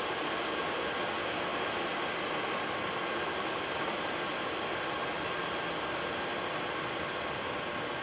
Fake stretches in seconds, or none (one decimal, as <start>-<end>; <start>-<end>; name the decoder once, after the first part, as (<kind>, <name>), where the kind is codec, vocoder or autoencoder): none